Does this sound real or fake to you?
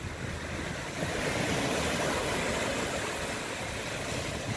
real